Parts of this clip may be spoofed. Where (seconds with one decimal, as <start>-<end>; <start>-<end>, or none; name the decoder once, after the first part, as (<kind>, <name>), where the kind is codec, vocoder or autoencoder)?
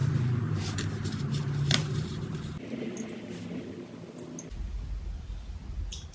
none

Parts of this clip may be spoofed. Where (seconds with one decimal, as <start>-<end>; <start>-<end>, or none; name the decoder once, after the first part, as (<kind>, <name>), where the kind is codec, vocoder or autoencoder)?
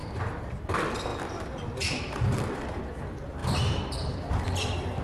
0.0-0.6 (vocoder, BigVGAN v2); 1.1-2.8; 3.4-5.0